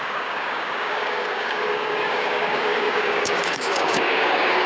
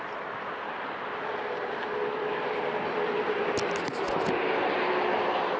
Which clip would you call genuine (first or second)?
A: second